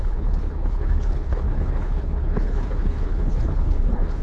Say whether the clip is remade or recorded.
remade